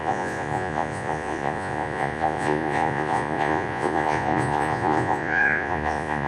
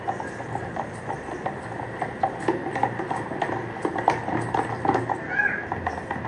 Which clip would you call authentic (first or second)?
second